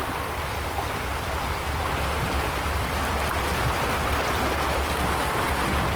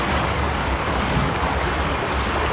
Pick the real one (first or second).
first